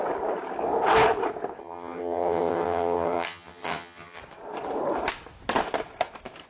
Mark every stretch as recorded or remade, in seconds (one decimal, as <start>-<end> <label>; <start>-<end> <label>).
0.0-1.6 recorded; 1.6-4.2 remade; 4.2-6.5 recorded